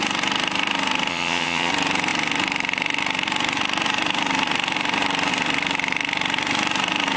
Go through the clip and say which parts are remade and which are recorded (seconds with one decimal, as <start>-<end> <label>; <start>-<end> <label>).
0.0-1.1 recorded; 1.1-1.7 remade; 1.7-7.2 recorded